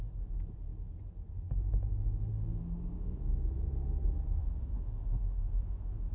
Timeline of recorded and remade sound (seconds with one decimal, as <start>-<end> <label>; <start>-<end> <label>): 0.0-2.3 recorded; 2.3-3.2 remade; 3.2-4.4 recorded; 4.4-6.1 remade